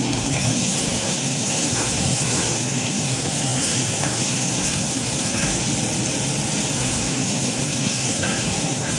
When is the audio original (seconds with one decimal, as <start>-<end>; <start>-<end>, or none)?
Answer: 5.6-6.7